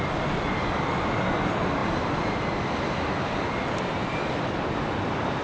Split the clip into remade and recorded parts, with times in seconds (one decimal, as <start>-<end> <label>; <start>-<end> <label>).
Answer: 0.0-1.8 recorded; 1.8-5.0 remade; 5.0-5.4 recorded